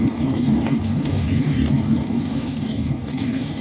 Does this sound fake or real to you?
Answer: fake